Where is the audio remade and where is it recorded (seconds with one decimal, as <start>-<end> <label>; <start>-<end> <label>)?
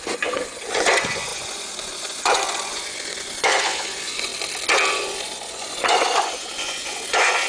0.0-4.3 remade; 4.3-4.9 recorded; 4.9-7.5 remade